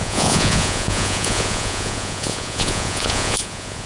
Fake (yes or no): yes